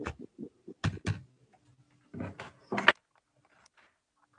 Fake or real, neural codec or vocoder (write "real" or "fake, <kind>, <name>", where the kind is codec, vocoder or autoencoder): real